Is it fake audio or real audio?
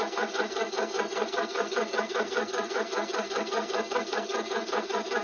fake